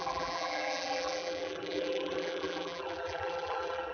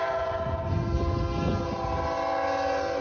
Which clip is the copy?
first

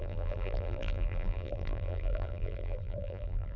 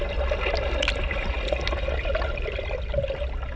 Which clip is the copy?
first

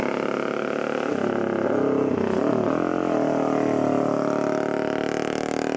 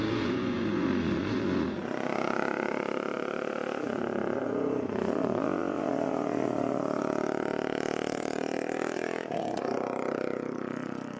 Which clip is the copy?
second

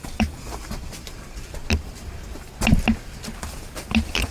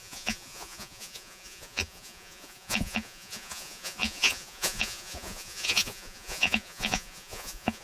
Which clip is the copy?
second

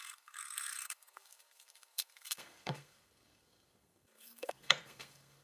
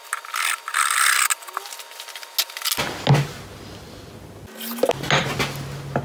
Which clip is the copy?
first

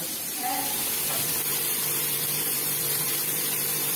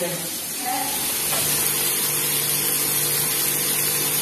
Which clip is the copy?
first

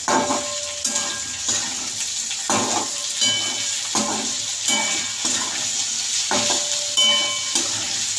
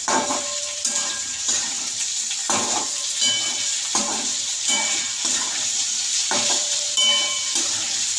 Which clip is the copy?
second